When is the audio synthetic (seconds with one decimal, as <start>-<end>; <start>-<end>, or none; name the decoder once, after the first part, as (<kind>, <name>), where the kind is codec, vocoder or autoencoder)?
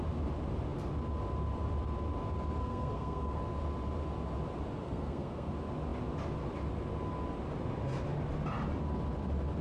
2.6-3.4 (codec, SNAC); 4.8-5.5